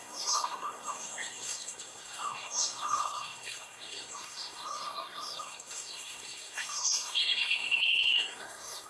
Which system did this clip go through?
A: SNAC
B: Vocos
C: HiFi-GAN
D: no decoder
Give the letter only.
A